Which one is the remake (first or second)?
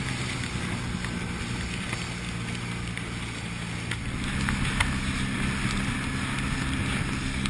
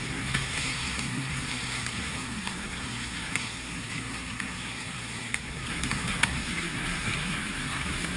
second